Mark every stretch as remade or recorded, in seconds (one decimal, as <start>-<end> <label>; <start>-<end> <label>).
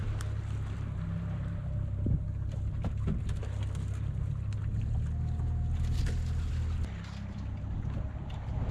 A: 0.0-8.7 recorded